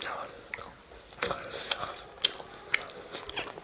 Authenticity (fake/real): real